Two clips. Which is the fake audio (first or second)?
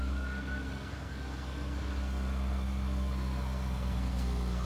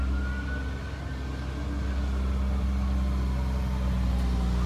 first